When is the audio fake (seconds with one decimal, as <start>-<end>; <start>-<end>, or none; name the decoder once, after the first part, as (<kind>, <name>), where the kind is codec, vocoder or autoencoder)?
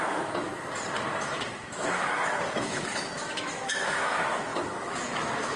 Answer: 0.0-0.5 (autoencoder, DAC-VAE); 1.2-5.6